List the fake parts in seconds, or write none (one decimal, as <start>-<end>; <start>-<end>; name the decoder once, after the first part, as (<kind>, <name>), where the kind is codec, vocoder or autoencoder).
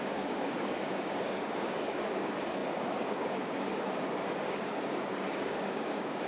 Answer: 0.0-6.3 (codec, DAC)